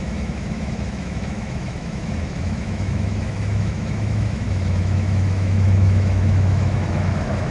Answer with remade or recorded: remade